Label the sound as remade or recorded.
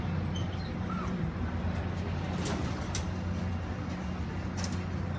recorded